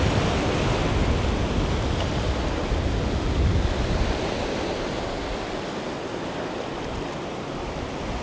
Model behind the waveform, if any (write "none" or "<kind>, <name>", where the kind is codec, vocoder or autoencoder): none